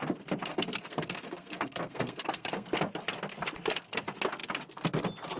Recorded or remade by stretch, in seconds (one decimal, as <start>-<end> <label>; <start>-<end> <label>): 0.0-0.5 recorded; 0.5-2.7 remade; 2.7-5.4 recorded